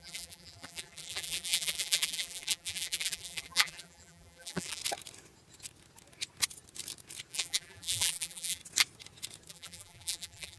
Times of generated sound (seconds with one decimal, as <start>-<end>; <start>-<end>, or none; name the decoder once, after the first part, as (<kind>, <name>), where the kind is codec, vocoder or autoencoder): 0.0-4.8 (vocoder, BigVGAN v2); 7.3-8.6; 9.5-10.6